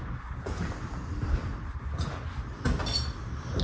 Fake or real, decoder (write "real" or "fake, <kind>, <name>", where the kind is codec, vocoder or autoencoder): real